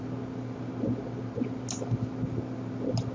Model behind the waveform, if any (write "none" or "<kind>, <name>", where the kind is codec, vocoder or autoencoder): none